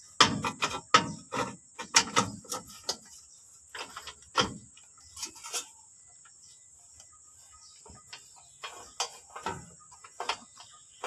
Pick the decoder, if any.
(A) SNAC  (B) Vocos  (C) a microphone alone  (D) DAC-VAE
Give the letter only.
C